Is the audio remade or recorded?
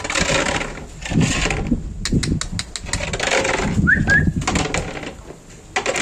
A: recorded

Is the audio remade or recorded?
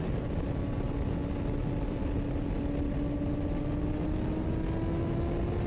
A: recorded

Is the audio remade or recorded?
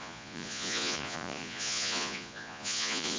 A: remade